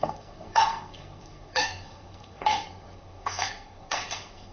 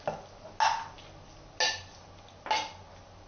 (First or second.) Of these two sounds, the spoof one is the first